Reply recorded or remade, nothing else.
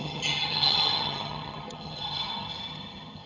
remade